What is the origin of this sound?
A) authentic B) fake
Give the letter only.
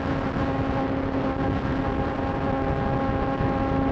A